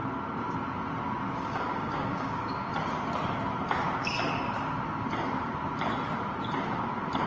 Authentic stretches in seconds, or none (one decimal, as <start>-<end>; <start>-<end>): 0.0-1.3; 2.7-7.3